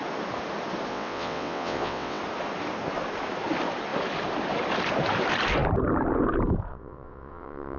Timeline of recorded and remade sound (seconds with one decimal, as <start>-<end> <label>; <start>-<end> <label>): 0.0-0.9 recorded; 0.9-2.2 remade; 2.2-6.7 recorded; 6.7-7.8 remade

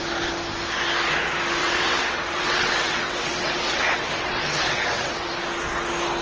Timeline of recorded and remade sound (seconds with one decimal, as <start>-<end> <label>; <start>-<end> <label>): 0.0-1.6 recorded; 1.6-5.3 remade; 5.3-6.2 recorded

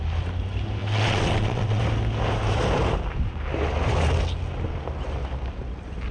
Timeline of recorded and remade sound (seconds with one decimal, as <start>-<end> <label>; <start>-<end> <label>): 0.0-0.8 recorded; 0.8-1.8 remade; 1.8-6.1 recorded

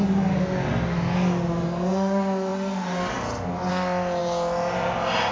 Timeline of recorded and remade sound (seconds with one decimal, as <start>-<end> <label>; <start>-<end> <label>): 0.0-5.3 recorded

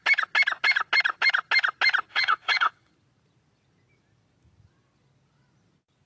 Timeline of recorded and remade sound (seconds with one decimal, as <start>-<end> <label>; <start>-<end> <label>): 0.0-2.1 recorded; 2.1-2.9 remade; 2.9-6.1 recorded

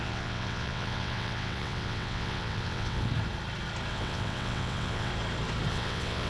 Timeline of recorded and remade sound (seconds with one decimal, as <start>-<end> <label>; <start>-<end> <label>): 0.0-3.1 remade; 3.1-3.9 recorded; 3.9-5.1 remade; 5.1-5.7 recorded; 5.7-6.3 remade